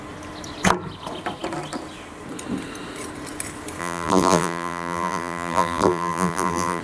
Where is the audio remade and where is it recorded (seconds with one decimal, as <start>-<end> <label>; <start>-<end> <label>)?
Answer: 0.0-3.8 recorded; 3.8-6.8 remade